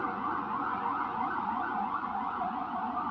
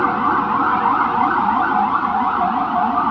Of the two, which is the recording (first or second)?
second